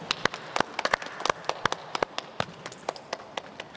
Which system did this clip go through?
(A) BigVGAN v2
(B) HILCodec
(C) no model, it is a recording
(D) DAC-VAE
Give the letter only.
C